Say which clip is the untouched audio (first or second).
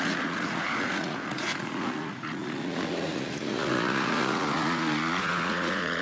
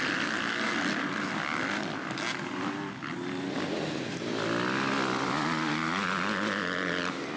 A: second